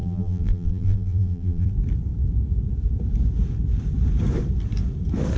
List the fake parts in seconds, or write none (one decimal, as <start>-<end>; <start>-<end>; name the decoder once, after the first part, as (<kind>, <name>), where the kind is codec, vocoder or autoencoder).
0.0-1.7 (vocoder, BigVGAN v2)